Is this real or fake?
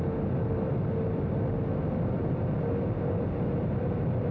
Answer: real